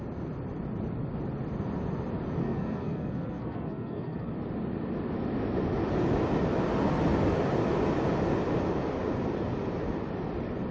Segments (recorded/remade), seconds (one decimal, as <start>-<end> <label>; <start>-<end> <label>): 0.0-2.4 recorded; 2.4-4.3 remade; 4.3-10.7 recorded